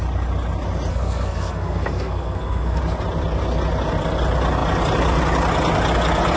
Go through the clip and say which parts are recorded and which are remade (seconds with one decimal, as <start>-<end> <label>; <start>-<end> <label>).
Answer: 0.0-0.9 recorded; 0.9-2.8 remade; 2.8-6.4 recorded